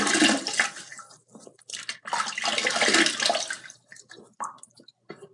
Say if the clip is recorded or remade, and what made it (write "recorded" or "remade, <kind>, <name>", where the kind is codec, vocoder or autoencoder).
recorded